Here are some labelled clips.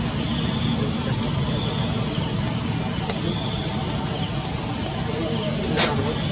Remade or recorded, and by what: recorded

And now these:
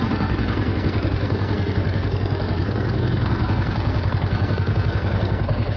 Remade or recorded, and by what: remade, codec, SNAC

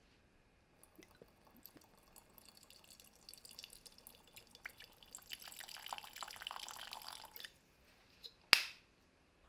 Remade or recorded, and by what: recorded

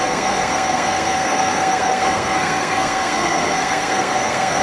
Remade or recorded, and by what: remade, codec, SNAC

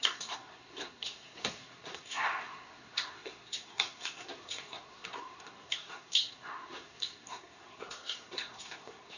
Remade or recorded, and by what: remade, codec, SNAC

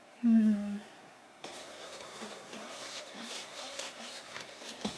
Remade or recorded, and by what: remade, codec, SNAC